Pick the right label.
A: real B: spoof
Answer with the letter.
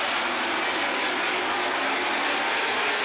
A